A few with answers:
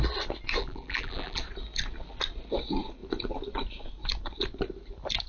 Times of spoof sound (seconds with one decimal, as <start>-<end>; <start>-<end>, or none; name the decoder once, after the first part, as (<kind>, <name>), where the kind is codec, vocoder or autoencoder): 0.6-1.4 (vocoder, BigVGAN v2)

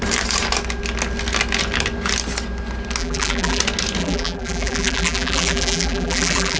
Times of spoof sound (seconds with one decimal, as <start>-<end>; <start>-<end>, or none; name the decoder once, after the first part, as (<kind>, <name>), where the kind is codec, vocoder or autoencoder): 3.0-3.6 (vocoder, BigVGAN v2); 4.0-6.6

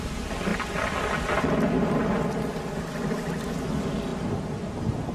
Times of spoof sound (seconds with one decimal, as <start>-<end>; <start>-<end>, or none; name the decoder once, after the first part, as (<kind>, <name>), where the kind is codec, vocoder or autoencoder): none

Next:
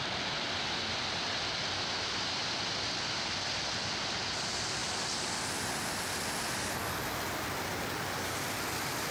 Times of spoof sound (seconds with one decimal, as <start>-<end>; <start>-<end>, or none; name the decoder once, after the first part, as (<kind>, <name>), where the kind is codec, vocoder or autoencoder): none